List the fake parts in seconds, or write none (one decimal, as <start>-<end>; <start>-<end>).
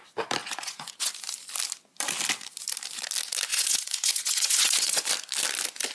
0.4-1.1; 3.5-5.1